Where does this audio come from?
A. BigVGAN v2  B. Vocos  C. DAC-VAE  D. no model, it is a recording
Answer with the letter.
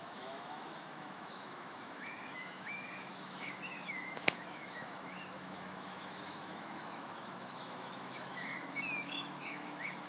C